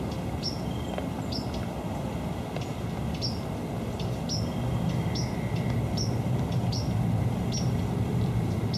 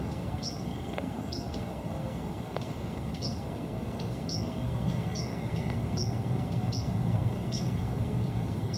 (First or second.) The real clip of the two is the first